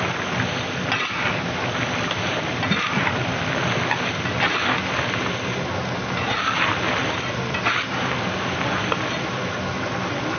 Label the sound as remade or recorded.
recorded